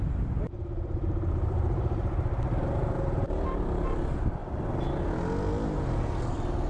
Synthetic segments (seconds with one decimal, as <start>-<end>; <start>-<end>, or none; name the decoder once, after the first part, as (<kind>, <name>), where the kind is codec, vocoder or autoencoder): 0.0-4.4 (vocoder, BigVGAN v2)